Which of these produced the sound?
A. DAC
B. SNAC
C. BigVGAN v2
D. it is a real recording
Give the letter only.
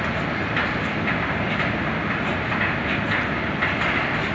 D